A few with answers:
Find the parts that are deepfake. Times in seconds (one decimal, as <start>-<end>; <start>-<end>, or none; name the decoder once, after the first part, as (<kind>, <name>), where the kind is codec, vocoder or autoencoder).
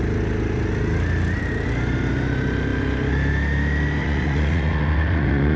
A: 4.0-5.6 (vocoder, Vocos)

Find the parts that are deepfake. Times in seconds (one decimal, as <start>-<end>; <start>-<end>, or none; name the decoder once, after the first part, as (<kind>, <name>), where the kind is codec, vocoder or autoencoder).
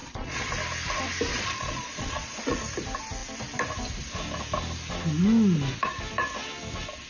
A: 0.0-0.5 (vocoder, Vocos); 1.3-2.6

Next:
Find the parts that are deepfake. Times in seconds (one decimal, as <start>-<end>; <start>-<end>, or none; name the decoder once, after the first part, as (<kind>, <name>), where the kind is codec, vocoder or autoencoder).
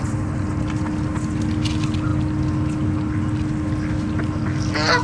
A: none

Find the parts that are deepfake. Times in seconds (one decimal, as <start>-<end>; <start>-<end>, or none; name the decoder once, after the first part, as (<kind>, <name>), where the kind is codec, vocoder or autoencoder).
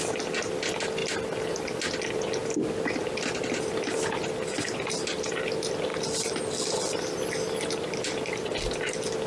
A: none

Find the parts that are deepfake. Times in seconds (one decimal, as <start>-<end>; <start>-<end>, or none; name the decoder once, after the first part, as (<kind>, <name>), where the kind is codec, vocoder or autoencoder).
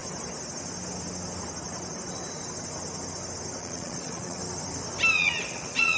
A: 3.6-4.4 (vocoder, Vocos); 5.1-6.0